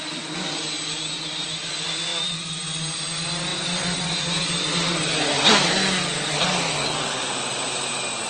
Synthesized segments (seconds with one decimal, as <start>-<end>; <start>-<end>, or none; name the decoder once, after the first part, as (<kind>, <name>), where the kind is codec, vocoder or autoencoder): none